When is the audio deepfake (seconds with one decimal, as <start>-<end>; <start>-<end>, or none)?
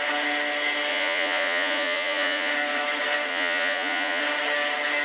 0.9-2.5; 3.3-4.2